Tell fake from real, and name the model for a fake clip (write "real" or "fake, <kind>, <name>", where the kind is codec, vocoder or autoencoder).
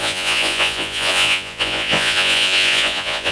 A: fake, vocoder, Vocos